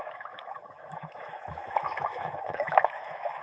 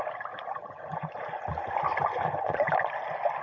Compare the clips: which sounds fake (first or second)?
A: first